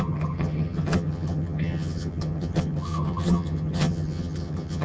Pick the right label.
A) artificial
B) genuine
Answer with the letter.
A